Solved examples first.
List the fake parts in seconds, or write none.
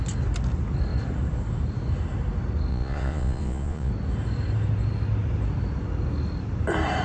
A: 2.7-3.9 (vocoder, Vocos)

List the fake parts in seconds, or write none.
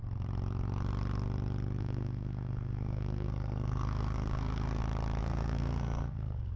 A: 1.8-4.8 (codec, SNAC); 5.2-6.6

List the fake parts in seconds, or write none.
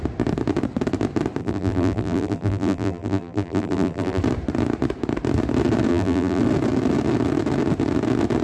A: 1.4-4.2 (vocoder, BigVGAN v2); 5.9-6.4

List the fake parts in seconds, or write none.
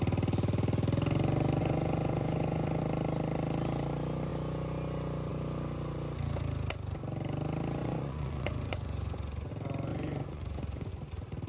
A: 1.6-2.8 (vocoder, Vocos); 7.8-9.5; 9.9-10.9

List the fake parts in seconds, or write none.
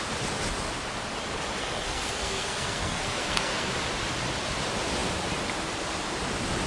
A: 1.6-3.7 (codec, SNAC)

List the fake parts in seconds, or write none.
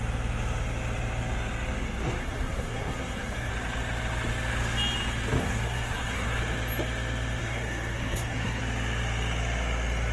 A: 2.2-3.5 (codec, SNAC); 5.4-6.4; 7.4-8.6